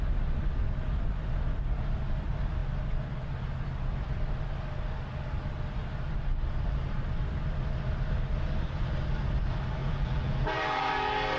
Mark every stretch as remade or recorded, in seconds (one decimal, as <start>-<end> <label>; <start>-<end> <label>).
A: 0.0-9.8 recorded; 9.8-10.9 remade; 10.9-11.4 recorded